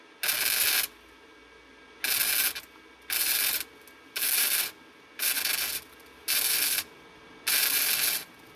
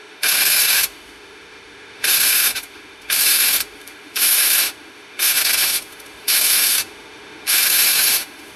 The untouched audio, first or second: first